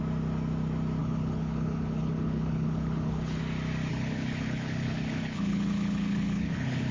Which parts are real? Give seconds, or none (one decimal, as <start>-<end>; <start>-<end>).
0.0-1.0; 3.4-3.9